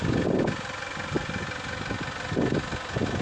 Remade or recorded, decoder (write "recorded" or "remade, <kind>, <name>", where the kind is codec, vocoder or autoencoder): recorded